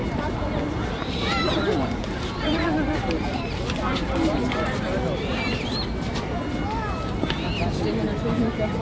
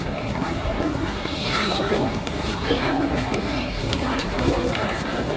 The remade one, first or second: second